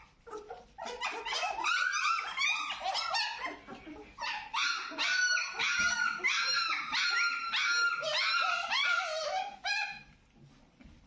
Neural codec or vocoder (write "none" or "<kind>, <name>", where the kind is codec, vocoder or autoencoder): none